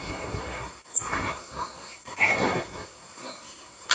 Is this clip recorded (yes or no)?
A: no